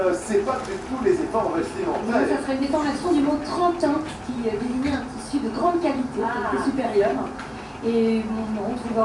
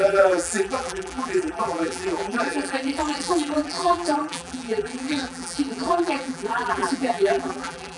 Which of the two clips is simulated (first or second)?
second